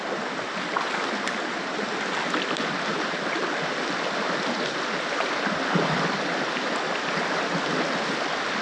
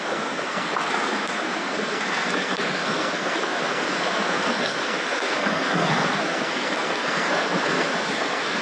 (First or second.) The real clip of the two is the first